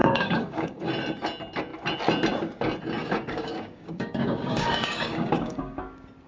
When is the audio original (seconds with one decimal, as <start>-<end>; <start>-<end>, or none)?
0.9-3.0; 5.8-6.3

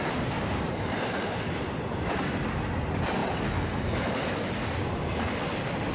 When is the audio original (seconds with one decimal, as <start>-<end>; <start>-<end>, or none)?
0.0-5.9